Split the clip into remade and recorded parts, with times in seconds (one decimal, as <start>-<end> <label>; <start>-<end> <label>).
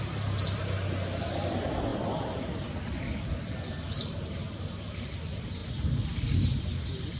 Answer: 0.0-7.2 recorded